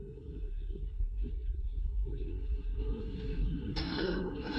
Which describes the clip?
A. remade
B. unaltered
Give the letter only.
A